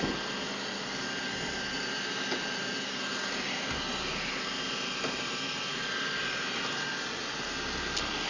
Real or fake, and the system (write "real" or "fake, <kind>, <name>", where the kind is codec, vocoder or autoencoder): real